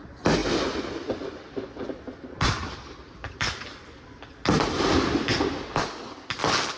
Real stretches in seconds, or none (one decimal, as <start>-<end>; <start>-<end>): 0.0-6.8